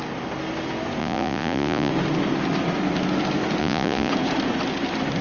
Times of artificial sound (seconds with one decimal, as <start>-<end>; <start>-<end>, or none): 1.0-1.9; 3.6-4.1